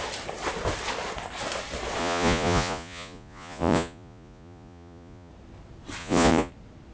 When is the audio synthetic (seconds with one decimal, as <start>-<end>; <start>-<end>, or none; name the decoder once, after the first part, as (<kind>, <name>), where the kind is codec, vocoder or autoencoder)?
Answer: 2.0-5.3 (vocoder, Vocos); 6.0-6.5